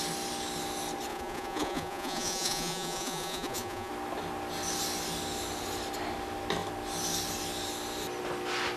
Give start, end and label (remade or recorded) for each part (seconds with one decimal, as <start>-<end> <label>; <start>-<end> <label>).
0.0-1.1 recorded; 1.1-3.9 remade; 3.9-8.8 recorded